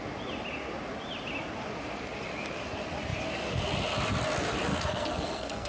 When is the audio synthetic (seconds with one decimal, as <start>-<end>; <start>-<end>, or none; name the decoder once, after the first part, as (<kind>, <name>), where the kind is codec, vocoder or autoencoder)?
4.7-5.7 (codec, SNAC)